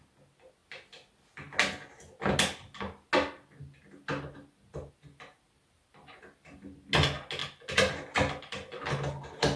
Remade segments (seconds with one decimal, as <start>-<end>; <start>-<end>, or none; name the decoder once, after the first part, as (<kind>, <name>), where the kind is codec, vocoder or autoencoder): none